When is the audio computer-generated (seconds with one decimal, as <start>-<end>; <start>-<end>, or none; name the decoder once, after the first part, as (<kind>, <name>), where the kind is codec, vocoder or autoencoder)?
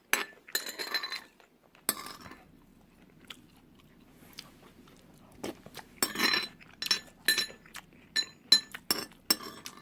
none